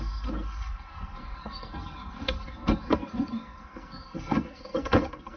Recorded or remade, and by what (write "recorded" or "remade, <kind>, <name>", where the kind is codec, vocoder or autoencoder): remade, codec, SNAC